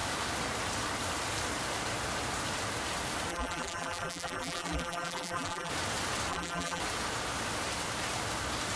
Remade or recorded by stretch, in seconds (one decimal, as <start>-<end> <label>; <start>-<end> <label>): 0.0-3.3 recorded; 3.3-5.7 remade; 5.7-6.3 recorded; 6.3-6.8 remade; 6.8-8.8 recorded